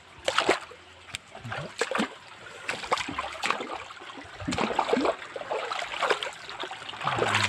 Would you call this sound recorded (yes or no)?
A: yes